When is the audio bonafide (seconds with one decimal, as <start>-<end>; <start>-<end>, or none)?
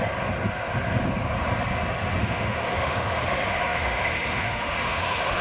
0.0-2.2